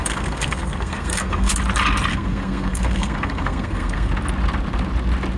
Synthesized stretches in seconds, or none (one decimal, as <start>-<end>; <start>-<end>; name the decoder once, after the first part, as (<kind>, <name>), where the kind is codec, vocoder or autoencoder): 0.0-1.5 (codec, SNAC); 2.1-4.1